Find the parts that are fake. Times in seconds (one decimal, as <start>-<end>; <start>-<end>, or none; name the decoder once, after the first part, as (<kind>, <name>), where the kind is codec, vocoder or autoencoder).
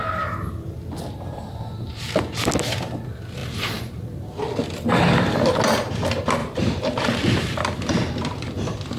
3.4-4.4 (vocoder, BigVGAN v2); 6.4-9.0